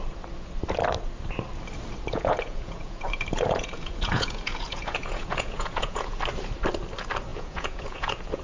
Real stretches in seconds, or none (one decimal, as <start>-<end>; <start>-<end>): 0.0-2.1; 6.2-7.3